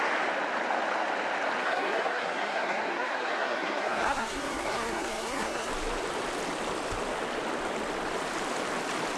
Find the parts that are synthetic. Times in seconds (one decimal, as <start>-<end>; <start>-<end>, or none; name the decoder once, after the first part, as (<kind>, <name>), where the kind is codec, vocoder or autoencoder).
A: 1.6-5.7 (codec, SNAC)